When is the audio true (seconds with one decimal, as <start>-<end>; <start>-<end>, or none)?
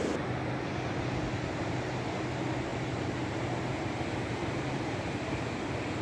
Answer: 0.0-2.7; 5.1-6.0